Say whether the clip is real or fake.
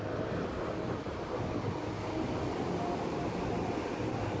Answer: real